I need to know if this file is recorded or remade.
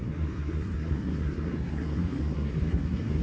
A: remade